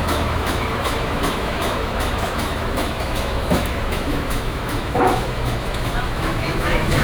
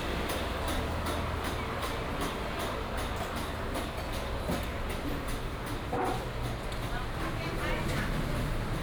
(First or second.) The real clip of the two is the second